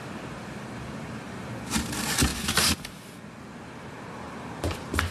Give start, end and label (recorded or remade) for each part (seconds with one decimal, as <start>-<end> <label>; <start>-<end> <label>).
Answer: 0.0-5.1 recorded